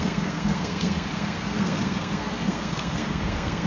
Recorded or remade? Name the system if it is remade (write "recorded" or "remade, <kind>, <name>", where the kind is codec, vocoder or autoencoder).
remade, codec, SNAC